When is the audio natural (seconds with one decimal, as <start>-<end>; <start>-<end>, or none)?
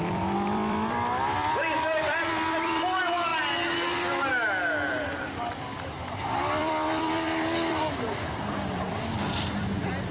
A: 3.3-4.9